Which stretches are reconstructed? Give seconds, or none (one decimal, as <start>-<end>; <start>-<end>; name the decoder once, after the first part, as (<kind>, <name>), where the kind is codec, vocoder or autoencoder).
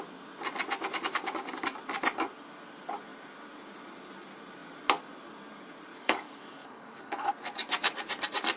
5.9-7.3 (codec, DAC)